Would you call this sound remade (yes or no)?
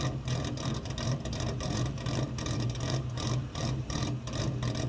yes